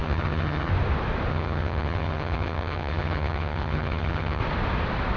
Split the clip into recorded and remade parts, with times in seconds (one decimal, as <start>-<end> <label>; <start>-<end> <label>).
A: 0.0-0.7 remade; 0.7-1.3 recorded; 1.3-4.4 remade; 4.4-5.2 recorded